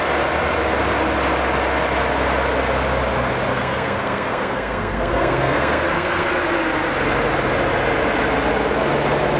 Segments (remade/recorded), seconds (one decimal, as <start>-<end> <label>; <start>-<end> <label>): 0.0-3.5 recorded; 3.5-6.3 remade; 6.3-9.4 recorded